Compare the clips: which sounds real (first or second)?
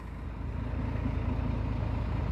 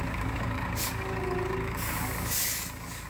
first